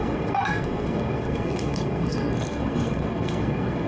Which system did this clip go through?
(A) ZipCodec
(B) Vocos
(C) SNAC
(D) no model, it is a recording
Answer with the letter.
C